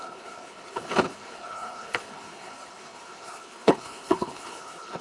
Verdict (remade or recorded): remade